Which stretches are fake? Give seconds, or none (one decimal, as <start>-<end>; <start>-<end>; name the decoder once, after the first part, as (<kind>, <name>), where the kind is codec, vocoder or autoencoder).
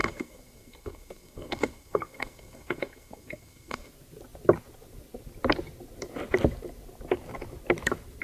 0.0-3.9 (codec, SNAC)